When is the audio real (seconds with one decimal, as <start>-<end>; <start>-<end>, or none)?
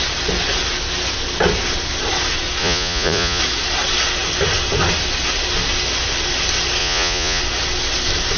0.0-2.6; 3.4-6.8; 7.4-8.4